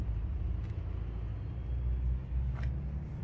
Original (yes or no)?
yes